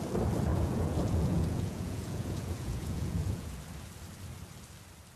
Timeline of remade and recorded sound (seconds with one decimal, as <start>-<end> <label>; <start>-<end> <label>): 0.0-0.5 recorded; 0.5-3.6 remade; 3.6-5.2 recorded